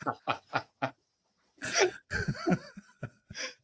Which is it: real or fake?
fake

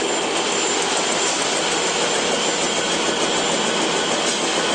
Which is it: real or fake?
real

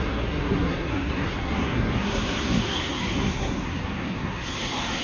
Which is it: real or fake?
fake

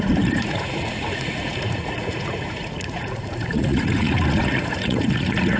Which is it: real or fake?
fake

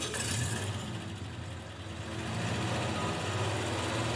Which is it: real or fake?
real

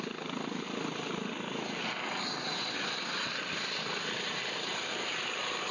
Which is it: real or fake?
real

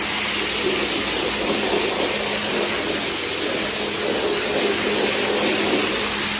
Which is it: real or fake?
real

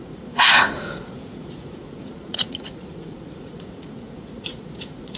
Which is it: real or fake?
fake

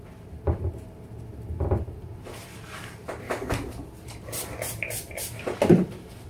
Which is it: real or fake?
real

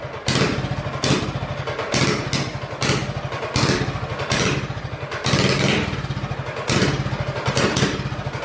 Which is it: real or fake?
real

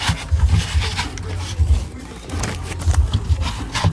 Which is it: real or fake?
real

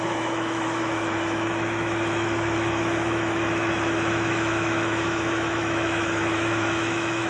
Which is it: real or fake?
fake